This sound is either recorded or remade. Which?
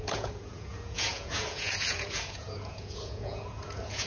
remade